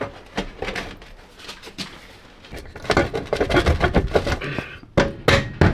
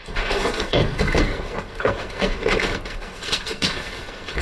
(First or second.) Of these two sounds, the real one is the first